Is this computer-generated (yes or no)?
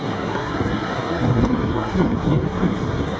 yes